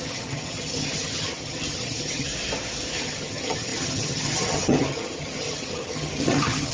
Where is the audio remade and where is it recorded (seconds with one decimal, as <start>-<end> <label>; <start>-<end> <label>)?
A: 0.0-2.3 remade; 2.3-3.0 recorded; 3.0-6.7 remade